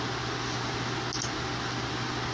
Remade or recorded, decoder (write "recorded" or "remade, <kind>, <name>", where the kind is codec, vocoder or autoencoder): recorded